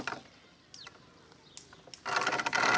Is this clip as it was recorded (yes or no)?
yes